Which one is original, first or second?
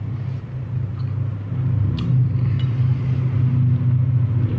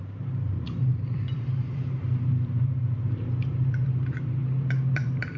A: first